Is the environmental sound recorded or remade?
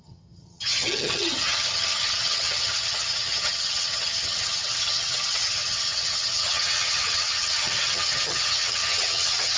remade